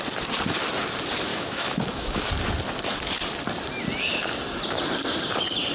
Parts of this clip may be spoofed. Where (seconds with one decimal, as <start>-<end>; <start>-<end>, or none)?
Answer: 1.3-2.3